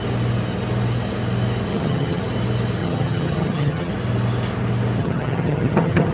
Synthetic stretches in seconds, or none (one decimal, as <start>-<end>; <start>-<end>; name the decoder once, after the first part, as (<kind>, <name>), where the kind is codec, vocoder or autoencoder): 1.7-2.2 (vocoder, HiFi-GAN); 2.8-3.9; 5.0-6.1